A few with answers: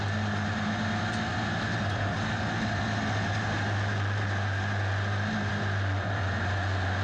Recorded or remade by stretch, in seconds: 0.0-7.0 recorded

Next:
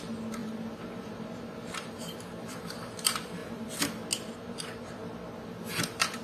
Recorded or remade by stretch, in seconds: 0.0-3.4 remade; 3.4-4.3 recorded; 4.3-5.0 remade; 5.0-5.7 recorded; 5.7-6.2 remade